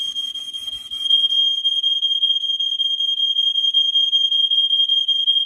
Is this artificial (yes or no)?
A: yes